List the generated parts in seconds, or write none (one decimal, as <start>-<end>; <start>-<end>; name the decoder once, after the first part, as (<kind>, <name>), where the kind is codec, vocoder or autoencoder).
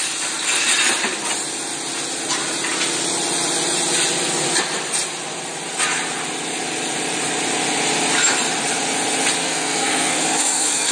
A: 9.4-10.9 (codec, SNAC)